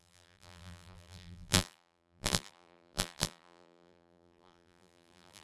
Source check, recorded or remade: remade